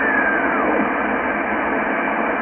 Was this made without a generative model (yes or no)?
yes